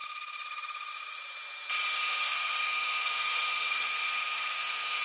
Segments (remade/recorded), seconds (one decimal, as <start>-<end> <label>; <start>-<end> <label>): 0.0-1.9 recorded; 1.9-5.0 remade